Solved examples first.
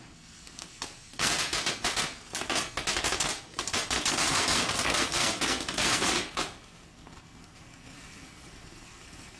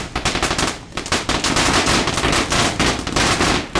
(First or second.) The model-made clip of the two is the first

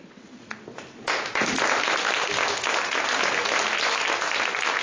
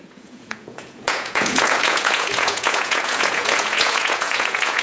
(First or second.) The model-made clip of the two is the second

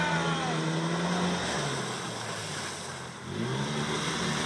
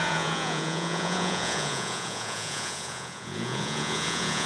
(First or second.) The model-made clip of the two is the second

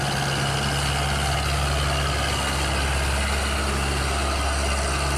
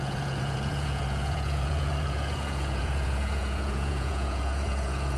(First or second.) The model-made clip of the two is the second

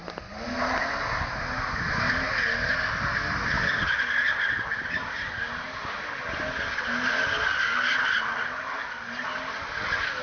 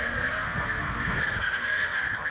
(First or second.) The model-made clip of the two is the second